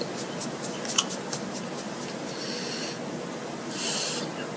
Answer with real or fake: real